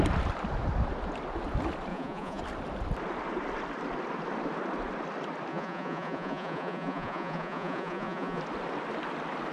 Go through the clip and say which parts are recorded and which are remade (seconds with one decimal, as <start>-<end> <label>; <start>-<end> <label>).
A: 0.0-1.9 recorded; 1.9-2.4 remade; 2.4-5.5 recorded; 5.5-8.4 remade; 8.4-9.5 recorded